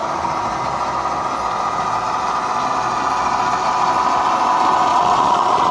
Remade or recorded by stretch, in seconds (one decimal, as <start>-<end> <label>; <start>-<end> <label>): 0.0-4.9 recorded; 4.9-5.7 remade

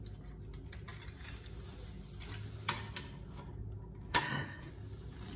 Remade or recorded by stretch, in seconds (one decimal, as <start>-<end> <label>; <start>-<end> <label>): 0.0-4.1 recorded; 4.1-4.7 remade; 4.7-5.4 recorded